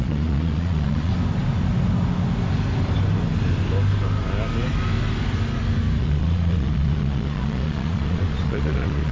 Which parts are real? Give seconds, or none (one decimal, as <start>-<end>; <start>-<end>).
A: 1.1-6.0